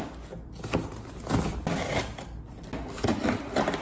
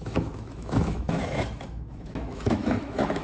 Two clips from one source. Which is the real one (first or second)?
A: first